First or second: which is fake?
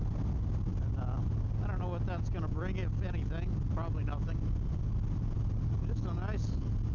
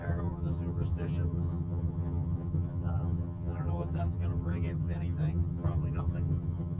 second